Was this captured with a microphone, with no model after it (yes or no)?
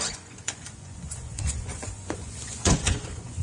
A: no